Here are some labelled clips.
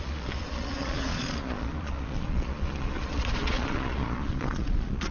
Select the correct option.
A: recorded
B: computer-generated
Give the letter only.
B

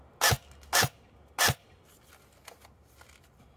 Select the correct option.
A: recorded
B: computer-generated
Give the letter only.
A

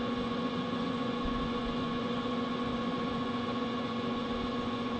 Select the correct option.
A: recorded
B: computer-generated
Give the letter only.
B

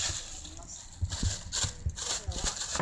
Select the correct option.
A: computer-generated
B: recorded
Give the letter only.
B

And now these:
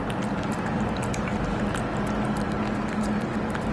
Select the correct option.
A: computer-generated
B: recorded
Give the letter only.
B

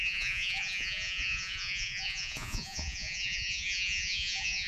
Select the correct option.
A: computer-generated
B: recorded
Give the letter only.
A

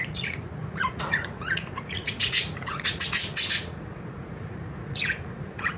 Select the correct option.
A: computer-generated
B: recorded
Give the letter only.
A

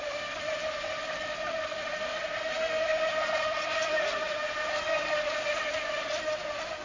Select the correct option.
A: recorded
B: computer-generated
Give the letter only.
A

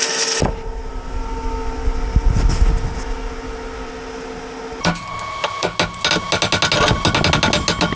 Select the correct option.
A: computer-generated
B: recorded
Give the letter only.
B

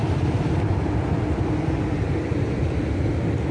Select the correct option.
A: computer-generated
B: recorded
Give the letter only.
B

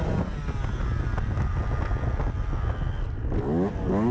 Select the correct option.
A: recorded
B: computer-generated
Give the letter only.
A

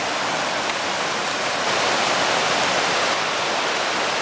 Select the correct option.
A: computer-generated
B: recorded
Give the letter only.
B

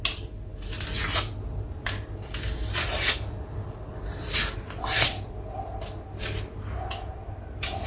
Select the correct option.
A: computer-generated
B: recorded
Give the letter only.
B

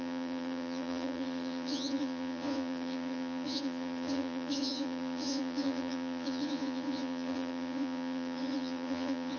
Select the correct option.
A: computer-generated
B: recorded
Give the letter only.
A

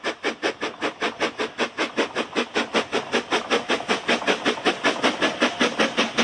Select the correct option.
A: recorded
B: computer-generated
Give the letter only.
A